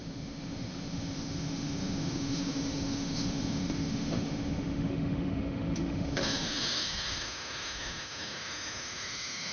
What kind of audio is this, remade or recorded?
remade